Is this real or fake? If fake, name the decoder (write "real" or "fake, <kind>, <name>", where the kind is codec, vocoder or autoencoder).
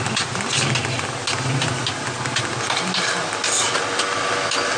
real